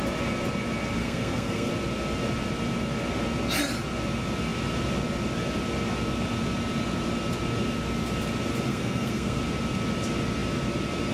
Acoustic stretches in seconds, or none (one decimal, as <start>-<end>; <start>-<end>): 0.0-1.0; 1.7-8.7; 9.4-11.1